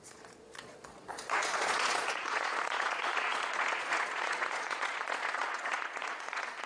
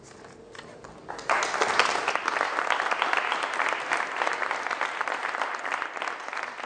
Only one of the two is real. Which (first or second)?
second